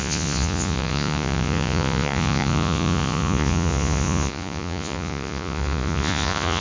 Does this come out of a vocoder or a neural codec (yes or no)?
yes